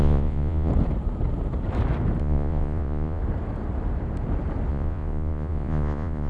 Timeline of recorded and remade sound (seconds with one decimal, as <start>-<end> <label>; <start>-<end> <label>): 0.0-0.7 remade; 0.7-2.2 recorded; 2.2-3.2 remade; 3.2-4.7 recorded; 4.7-6.3 remade